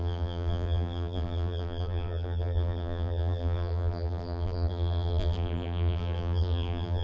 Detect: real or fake fake